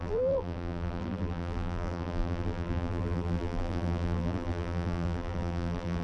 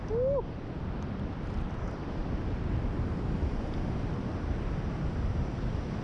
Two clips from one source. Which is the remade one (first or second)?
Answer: first